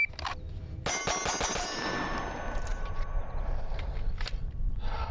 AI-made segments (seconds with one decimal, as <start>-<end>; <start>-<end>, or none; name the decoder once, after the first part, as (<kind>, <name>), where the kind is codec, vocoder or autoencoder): 1.5-2.2 (vocoder, BigVGAN v2); 2.7-3.7